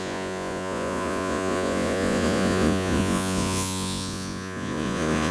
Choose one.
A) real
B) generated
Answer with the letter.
B